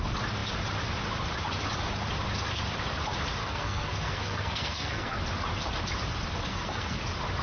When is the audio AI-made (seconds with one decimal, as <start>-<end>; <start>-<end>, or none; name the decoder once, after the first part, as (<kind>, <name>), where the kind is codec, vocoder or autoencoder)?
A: 3.4-5.2 (codec, SNAC); 6.5-7.0